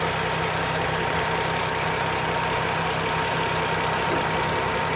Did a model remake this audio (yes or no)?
no